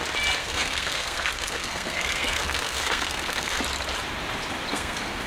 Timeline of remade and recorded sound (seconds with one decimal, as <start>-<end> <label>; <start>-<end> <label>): 0.0-0.4 recorded; 0.4-3.6 remade; 3.6-4.7 recorded; 4.7-5.3 remade